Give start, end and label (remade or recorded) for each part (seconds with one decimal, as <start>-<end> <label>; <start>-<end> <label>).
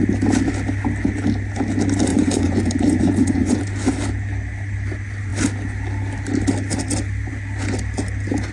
0.0-2.1 recorded; 2.1-3.6 remade; 3.6-8.5 recorded